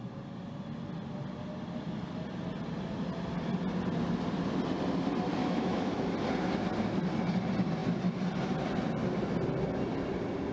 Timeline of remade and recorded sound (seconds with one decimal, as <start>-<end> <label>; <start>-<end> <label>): 0.0-5.4 recorded; 5.4-6.1 remade; 6.1-10.5 recorded